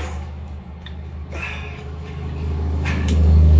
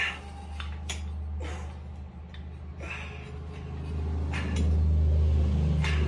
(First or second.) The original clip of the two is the second